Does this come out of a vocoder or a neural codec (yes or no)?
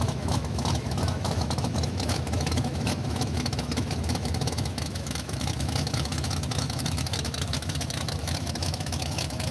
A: yes